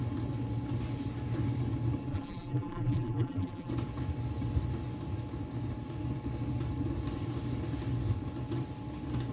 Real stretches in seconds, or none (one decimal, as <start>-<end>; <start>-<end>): 0.0-2.1; 3.7-9.3

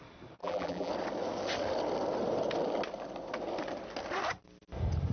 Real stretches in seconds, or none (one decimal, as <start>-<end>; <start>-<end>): 0.0-0.4; 0.9-5.1

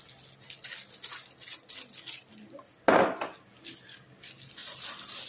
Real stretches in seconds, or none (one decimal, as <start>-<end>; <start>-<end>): 0.0-5.3

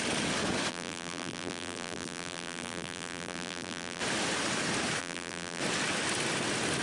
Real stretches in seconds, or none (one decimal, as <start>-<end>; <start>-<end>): 0.0-0.7; 4.0-5.0; 5.6-6.8

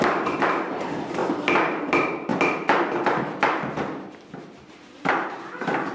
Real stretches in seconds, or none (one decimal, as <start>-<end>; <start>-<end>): 1.2-1.8; 2.3-4.7